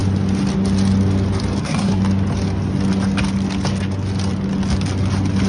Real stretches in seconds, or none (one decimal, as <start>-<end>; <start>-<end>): 0.0-1.6; 2.0-5.5